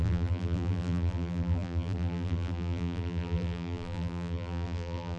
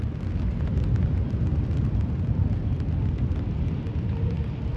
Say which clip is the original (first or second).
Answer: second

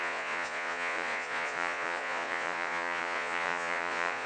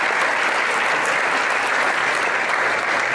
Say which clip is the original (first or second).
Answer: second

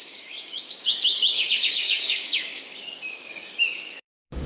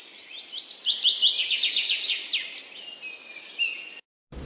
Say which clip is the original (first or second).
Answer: second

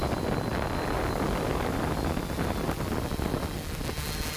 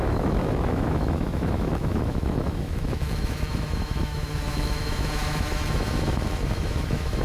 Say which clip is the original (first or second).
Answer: first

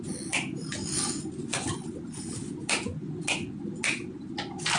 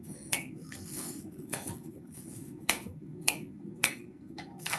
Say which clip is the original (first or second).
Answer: first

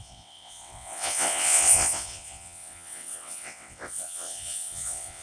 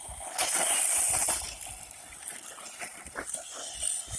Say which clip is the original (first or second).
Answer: second